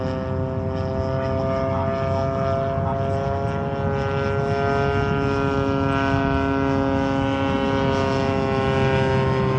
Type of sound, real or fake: real